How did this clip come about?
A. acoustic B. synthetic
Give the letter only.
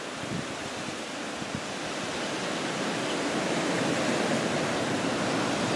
A